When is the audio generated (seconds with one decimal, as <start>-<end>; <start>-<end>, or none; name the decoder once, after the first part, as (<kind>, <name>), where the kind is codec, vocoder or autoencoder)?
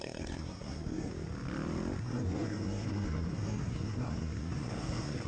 0.0-1.1 (codec, SNAC); 2.0-5.3